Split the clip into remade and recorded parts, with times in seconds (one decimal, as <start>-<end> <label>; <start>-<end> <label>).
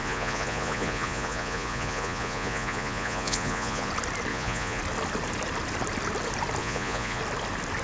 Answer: 0.0-3.9 remade; 3.9-4.3 recorded; 4.3-4.8 remade; 4.8-6.6 recorded; 6.6-7.2 remade; 7.2-7.8 recorded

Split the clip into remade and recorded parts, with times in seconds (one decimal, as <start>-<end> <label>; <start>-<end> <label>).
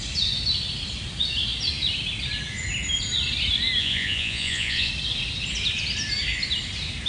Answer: 0.0-3.8 recorded; 3.8-4.9 remade; 4.9-7.1 recorded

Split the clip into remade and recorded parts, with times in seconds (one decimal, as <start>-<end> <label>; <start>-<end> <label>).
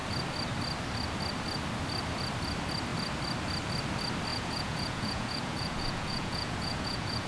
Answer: 0.0-4.3 recorded; 4.3-7.3 remade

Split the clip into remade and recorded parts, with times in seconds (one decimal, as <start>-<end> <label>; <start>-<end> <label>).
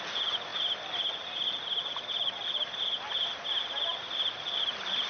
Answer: 0.0-5.1 recorded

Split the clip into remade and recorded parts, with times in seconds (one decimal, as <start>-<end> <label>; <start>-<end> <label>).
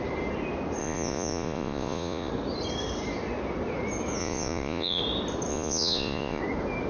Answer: 0.0-0.8 recorded; 0.8-2.3 remade; 2.3-4.2 recorded; 4.2-5.0 remade; 5.0-5.5 recorded; 5.5-6.4 remade; 6.4-6.9 recorded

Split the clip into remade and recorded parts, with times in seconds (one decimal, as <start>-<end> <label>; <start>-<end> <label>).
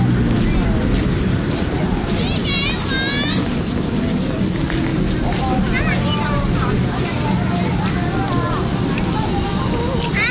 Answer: 0.0-10.3 recorded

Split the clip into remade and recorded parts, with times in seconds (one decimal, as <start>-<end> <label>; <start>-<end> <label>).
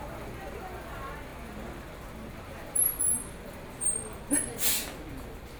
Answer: 0.0-5.6 recorded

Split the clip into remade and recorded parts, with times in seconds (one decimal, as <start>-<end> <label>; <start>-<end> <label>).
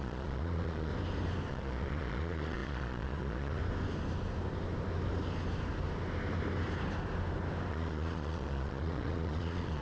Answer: 0.0-0.9 remade; 0.9-1.5 recorded; 1.5-3.6 remade; 3.6-7.7 recorded; 7.7-9.8 remade